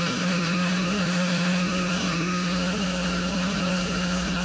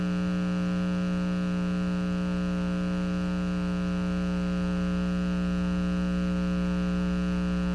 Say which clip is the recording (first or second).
second